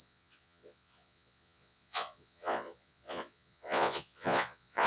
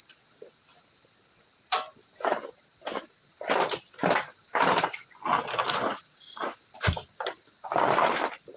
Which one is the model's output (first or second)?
first